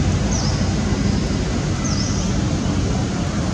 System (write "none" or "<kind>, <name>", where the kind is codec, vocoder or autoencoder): none